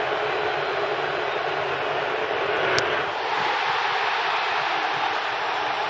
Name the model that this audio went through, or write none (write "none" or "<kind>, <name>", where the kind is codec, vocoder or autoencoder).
none